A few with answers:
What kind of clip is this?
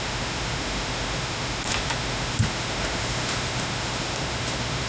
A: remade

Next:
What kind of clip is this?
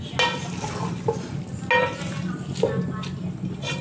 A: recorded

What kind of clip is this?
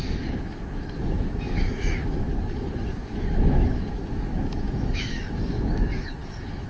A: remade